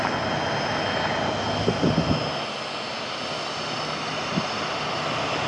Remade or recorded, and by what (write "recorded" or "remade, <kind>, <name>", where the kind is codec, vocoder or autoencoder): recorded